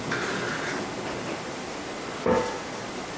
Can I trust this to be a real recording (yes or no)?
yes